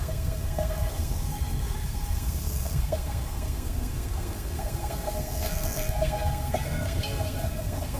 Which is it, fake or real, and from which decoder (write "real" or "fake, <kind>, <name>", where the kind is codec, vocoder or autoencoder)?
fake, codec, SNAC